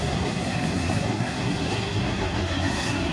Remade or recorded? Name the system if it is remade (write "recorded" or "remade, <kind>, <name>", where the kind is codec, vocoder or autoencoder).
remade, codec, SNAC